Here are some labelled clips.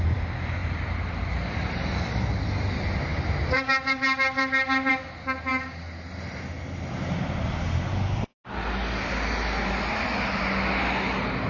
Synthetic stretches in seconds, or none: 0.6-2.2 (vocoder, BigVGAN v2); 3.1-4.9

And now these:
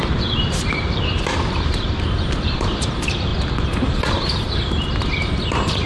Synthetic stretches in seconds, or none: 0.0-3.3 (vocoder, BigVGAN v2)

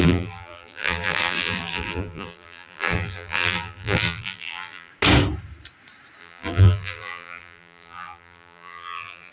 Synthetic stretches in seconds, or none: 0.0-4.9 (vocoder, BigVGAN v2); 6.2-9.3

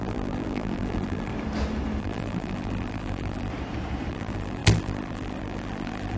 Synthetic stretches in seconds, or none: 0.0-1.3 (vocoder, BigVGAN v2); 2.0-3.5; 4.1-6.2

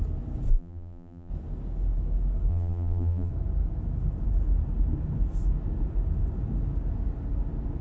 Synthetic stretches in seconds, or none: 0.5-1.3 (vocoder, BigVGAN v2); 2.5-3.3